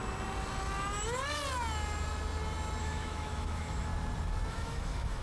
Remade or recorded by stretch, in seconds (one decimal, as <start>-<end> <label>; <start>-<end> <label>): 0.0-2.8 recorded; 2.8-3.9 remade; 3.9-4.5 recorded; 4.5-5.2 remade